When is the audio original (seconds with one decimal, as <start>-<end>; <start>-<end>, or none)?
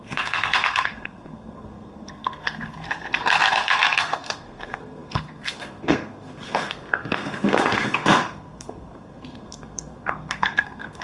none